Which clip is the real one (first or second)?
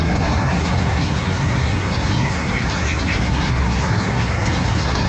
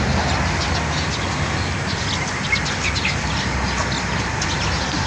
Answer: second